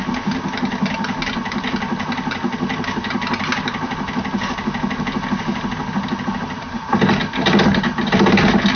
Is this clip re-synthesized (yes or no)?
no